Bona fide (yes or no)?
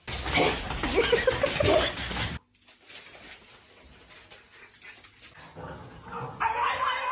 yes